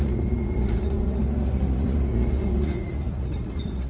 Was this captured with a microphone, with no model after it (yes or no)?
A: no